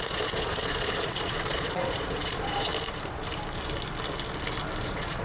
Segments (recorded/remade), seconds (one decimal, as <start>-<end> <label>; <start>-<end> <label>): 0.0-2.7 remade; 2.7-4.8 recorded; 4.8-5.2 remade